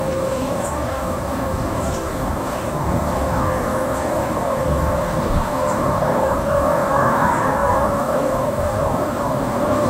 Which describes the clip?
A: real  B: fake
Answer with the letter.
B